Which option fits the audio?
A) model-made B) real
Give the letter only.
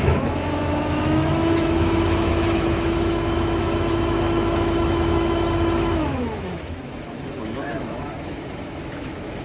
A